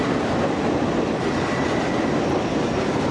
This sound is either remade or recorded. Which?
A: recorded